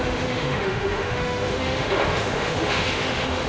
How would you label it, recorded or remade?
remade